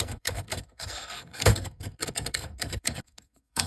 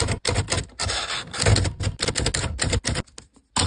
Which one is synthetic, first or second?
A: first